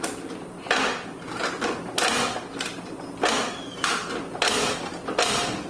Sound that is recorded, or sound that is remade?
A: recorded